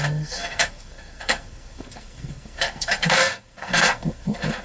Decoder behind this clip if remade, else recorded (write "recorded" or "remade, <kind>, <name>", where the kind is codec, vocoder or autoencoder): remade, codec, SNAC